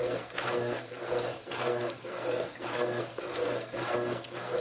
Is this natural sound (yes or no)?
no